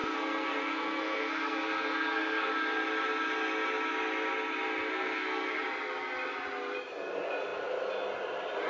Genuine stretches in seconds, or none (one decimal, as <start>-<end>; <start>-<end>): 2.5-4.9; 5.6-8.7